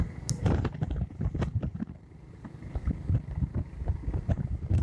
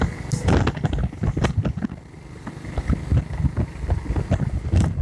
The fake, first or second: first